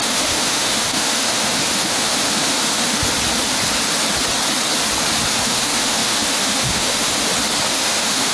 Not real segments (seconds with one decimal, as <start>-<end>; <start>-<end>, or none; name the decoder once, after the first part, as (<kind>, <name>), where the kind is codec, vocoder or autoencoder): 0.0-3.0 (autoencoder, DAC-VAE); 5.3-7.1; 7.7-8.3